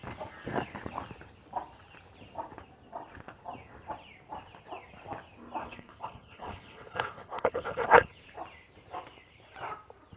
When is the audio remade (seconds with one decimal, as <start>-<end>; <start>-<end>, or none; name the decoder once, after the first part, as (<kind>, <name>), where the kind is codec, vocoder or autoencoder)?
5.6-8.1 (codec, HILCodec)